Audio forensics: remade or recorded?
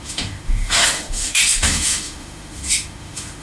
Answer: remade